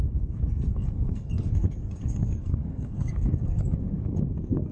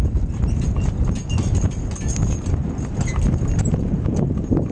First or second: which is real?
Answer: second